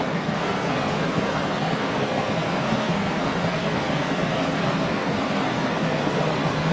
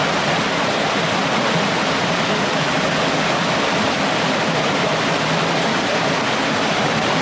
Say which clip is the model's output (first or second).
first